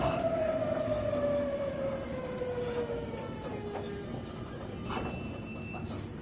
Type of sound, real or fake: real